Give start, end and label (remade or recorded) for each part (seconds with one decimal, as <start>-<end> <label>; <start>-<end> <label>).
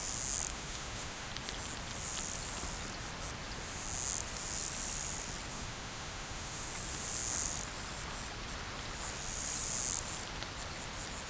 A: 0.0-0.5 recorded; 0.5-1.3 remade; 1.3-5.5 recorded; 5.5-6.7 remade; 6.7-11.3 recorded